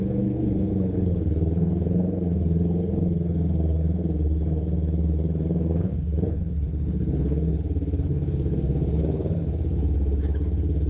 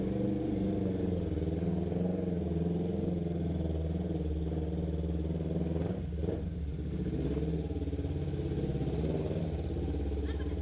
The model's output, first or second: first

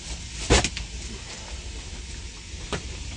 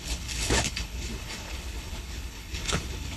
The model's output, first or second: second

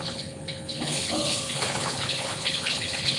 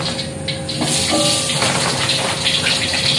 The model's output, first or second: first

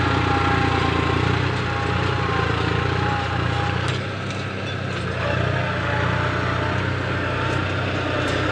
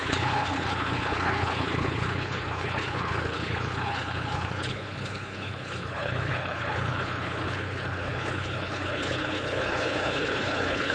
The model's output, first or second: second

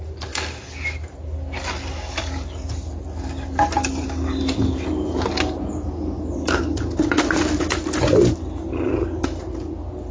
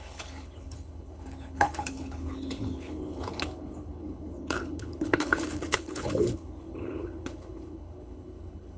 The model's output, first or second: second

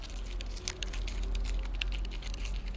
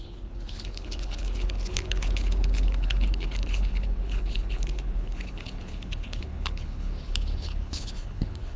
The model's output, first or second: second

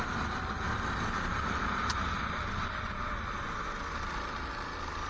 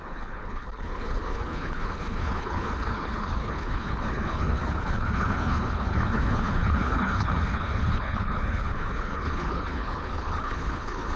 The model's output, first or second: second